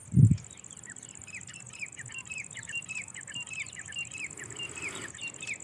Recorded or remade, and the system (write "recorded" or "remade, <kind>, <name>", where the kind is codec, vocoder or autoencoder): recorded